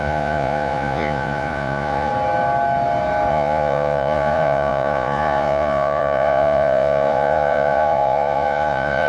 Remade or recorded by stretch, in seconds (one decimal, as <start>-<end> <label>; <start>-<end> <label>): 0.0-2.1 remade; 2.1-3.3 recorded; 3.3-9.1 remade